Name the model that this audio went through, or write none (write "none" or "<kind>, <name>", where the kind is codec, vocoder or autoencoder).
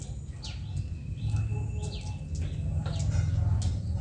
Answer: none